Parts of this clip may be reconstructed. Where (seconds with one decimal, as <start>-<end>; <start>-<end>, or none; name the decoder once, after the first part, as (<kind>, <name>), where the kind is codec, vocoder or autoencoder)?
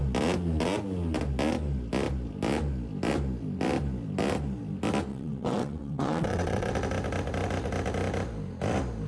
5.1-6.7 (vocoder, WaveNeXt)